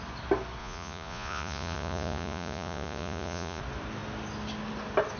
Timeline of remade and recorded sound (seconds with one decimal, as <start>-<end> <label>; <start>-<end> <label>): 0.0-0.6 recorded; 0.6-3.6 remade; 3.6-5.2 recorded